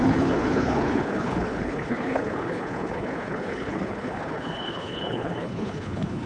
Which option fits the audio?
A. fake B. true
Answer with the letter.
A